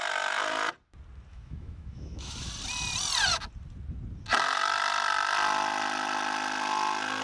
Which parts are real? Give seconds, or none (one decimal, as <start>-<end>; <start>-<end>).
0.0-1.3; 2.5-7.2